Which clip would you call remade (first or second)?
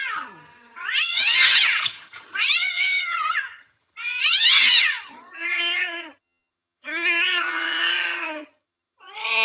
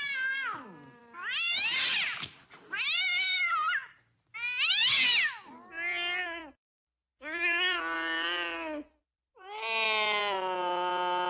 first